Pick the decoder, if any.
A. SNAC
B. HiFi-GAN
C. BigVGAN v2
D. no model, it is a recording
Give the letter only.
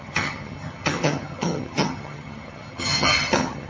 B